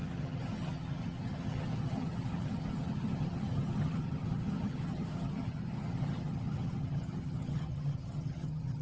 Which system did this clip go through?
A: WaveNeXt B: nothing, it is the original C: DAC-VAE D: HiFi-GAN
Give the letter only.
D